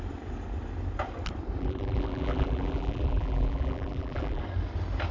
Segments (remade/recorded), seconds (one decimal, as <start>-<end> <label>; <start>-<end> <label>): 0.0-1.6 recorded; 1.6-4.4 remade; 4.4-5.1 recorded